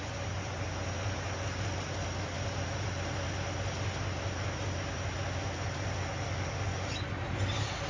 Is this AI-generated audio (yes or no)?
no